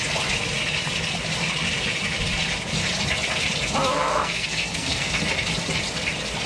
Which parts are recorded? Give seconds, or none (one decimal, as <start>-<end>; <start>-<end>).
0.0-3.8; 5.1-6.5